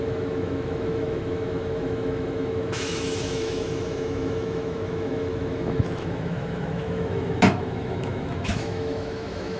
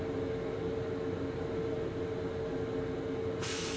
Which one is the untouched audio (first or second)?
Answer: second